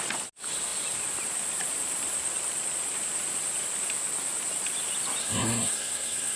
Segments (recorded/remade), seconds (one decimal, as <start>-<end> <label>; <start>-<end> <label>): 0.0-5.2 recorded; 5.2-6.4 remade